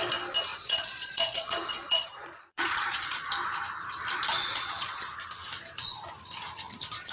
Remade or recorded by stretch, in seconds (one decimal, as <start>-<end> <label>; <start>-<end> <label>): 0.0-0.5 recorded; 0.5-3.3 remade; 3.3-4.4 recorded; 4.4-5.0 remade; 5.0-7.1 recorded

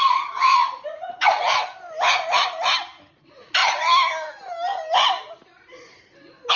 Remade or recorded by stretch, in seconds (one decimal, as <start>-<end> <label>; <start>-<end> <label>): 0.0-1.3 remade; 1.3-3.1 recorded; 3.1-3.6 remade; 3.6-6.6 recorded

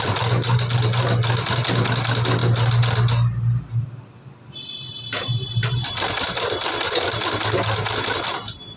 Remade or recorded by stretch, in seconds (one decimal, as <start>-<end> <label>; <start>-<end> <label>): 0.0-8.8 recorded

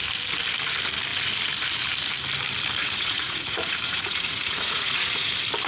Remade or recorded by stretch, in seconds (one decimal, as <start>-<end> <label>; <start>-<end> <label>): 0.0-2.8 recorded; 2.8-5.3 remade; 5.3-5.7 recorded

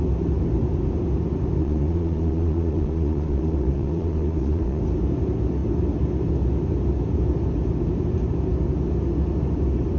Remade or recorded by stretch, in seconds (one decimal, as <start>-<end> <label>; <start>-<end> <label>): 0.0-1.6 recorded; 1.6-4.8 remade; 4.8-10.0 recorded

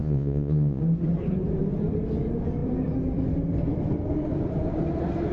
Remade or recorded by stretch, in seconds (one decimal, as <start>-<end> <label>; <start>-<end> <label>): 0.0-0.8 remade; 0.8-5.3 recorded

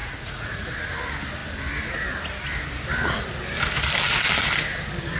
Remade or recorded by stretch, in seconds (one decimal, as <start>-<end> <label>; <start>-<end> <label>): 0.0-0.7 remade; 0.7-5.2 recorded

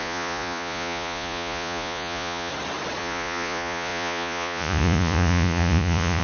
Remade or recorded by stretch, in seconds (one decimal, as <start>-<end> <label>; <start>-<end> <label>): 0.0-2.5 remade; 2.5-3.0 recorded; 3.0-6.2 remade